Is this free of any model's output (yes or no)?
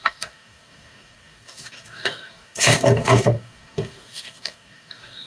no